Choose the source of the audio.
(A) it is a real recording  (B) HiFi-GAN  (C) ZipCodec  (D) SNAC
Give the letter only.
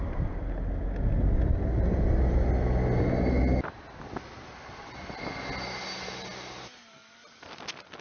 A